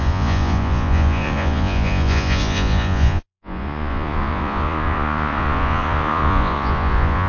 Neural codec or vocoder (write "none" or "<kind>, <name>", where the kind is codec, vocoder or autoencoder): vocoder, Vocos